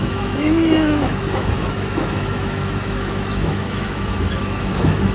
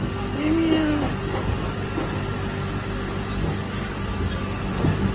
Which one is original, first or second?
second